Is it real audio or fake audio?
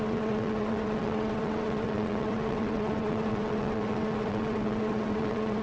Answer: fake